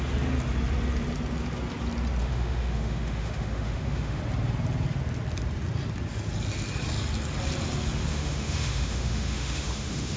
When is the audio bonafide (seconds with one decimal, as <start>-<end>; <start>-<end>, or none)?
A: 0.0-2.2; 4.2-8.1